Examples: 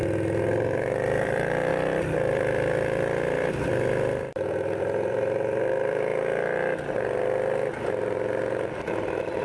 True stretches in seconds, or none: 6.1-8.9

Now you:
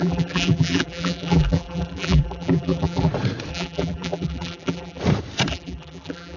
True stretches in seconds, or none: 3.1-3.5; 5.0-5.5

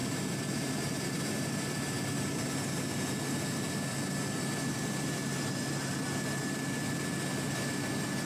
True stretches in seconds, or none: 1.3-8.3

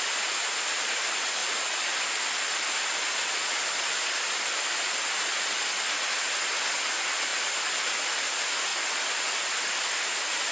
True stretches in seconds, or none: 0.0-1.4; 3.0-7.3; 7.9-8.7; 9.8-10.5

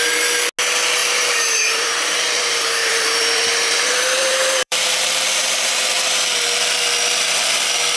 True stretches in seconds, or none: 0.0-1.0; 5.8-8.0